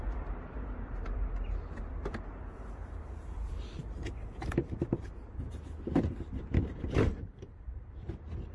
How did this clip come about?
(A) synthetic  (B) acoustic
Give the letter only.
A